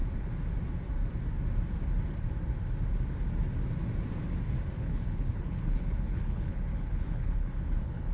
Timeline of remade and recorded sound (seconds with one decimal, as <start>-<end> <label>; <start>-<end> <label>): 0.0-4.8 recorded; 4.8-8.1 remade